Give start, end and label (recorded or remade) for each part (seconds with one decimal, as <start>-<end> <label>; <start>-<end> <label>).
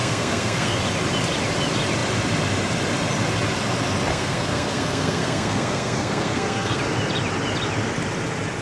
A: 0.0-0.8 remade; 0.8-4.1 recorded; 4.1-6.8 remade; 6.8-8.6 recorded